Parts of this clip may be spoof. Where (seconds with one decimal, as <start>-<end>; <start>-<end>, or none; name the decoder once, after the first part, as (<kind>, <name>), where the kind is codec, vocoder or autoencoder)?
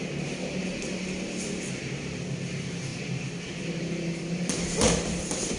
none